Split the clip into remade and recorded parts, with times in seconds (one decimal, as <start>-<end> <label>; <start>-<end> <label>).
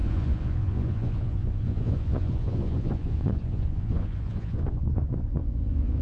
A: 0.0-6.0 remade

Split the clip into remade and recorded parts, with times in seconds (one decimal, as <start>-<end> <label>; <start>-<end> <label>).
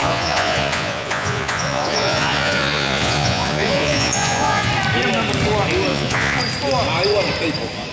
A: 0.0-4.7 remade; 4.7-5.9 recorded; 5.9-6.4 remade; 6.4-7.9 recorded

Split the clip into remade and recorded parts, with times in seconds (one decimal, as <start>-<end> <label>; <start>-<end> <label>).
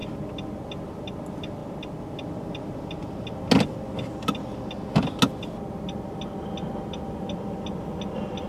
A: 0.0-8.5 recorded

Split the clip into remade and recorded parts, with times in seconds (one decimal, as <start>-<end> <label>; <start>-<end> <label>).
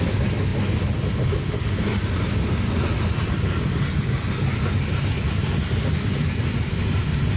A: 0.0-7.4 recorded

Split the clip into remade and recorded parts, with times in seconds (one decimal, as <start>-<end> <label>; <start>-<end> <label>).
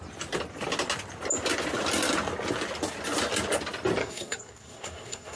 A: 0.0-4.0 recorded; 4.0-5.4 remade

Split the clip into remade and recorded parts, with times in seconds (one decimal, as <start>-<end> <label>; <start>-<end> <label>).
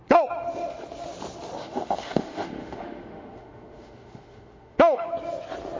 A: 0.0-1.6 recorded; 1.6-5.1 remade; 5.1-5.8 recorded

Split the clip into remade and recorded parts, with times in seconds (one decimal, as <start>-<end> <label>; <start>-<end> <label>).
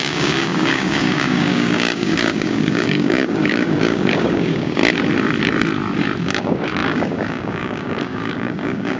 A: 0.0-4.8 remade; 4.8-6.2 recorded; 6.2-9.0 remade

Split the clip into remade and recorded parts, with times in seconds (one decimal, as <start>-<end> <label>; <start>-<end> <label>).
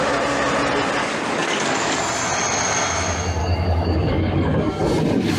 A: 0.0-1.0 recorded; 1.0-2.0 remade; 2.0-3.4 recorded; 3.4-4.8 remade; 4.8-5.4 recorded